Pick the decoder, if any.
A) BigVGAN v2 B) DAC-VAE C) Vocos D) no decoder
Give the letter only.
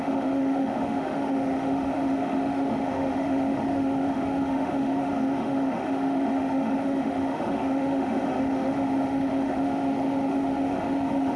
B